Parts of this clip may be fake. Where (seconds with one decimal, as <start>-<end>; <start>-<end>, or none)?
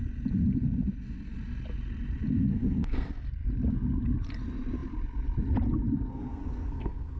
2.5-3.1; 6.1-7.2